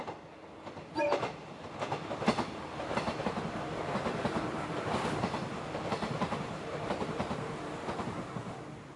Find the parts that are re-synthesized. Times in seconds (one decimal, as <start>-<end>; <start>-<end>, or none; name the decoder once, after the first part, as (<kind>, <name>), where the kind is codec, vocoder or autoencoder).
4.1-8.2 (vocoder, BigVGAN v2)